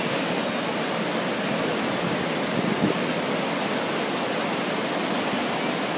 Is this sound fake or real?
real